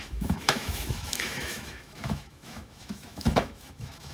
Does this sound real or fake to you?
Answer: fake